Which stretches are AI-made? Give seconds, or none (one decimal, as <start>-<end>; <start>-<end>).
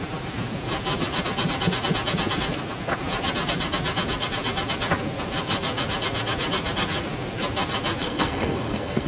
8.0-9.1